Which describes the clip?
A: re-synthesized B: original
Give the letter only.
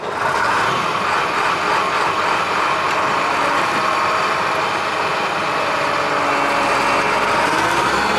B